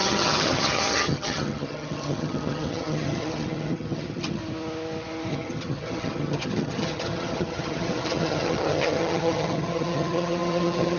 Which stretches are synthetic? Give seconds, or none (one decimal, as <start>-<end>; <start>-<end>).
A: 0.0-4.4; 5.3-11.0